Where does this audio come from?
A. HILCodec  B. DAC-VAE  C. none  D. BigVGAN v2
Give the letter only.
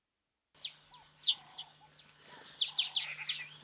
C